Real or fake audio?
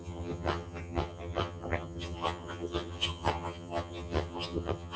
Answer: fake